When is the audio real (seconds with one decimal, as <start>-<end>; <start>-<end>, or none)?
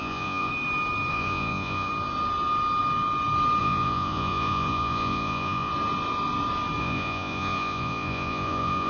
0.5-1.1; 1.9-3.6; 5.7-6.8